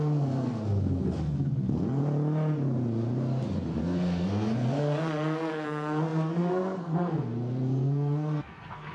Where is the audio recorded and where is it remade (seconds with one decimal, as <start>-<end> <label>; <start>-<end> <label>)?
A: 0.0-2.0 remade; 2.0-3.8 recorded; 3.8-8.9 remade